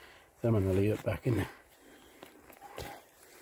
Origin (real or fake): fake